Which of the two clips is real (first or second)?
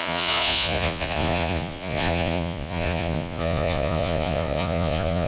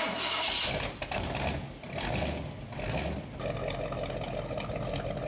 second